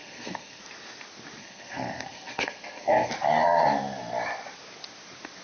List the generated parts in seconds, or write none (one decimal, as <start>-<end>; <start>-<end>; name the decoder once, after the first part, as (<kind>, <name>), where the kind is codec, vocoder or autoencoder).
0.0-0.6 (codec, SNAC); 1.4-3.1